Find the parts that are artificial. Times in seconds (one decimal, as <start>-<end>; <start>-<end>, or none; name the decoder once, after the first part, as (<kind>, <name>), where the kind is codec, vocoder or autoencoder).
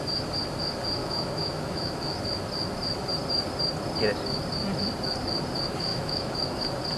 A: 1.0-2.2 (autoencoder, DAC-VAE); 5.9-6.6